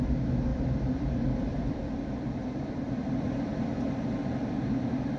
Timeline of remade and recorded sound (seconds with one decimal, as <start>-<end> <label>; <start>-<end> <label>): 0.0-0.5 recorded; 0.5-3.6 remade; 3.6-5.2 recorded